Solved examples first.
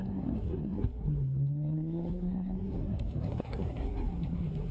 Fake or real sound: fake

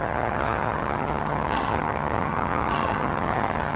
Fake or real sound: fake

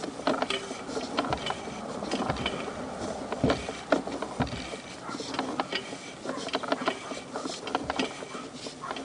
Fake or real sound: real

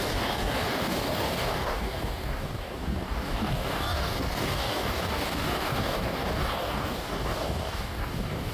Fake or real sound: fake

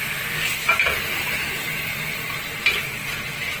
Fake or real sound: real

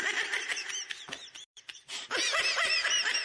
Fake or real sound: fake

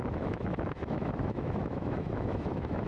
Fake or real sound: fake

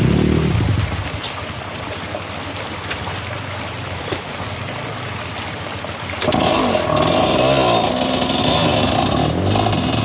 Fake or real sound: real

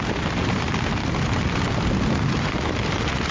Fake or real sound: real